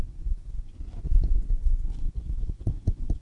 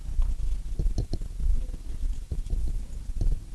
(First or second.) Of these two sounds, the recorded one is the second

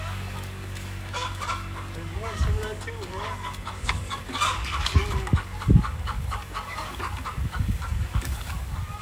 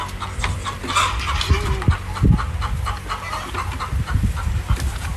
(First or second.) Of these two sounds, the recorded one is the second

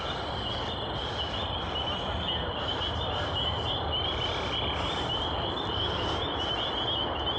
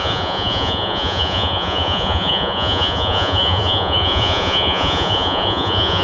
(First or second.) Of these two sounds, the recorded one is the first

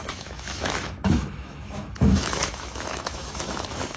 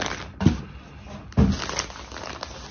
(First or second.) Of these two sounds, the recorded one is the second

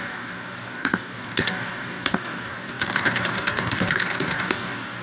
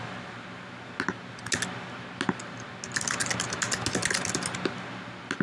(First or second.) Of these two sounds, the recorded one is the second